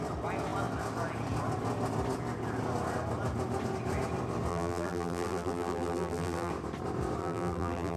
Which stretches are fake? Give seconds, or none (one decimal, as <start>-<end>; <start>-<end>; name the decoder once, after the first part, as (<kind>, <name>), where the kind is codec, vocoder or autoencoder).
4.5-6.5 (vocoder, BigVGAN v2); 7.2-8.0